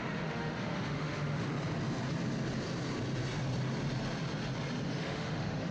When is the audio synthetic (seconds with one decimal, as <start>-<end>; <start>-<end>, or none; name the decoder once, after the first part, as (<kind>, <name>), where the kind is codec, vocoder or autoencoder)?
0.0-1.5 (autoencoder, DAC-VAE); 4.9-5.7